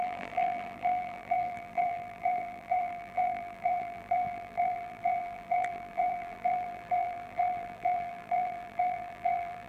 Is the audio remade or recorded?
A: remade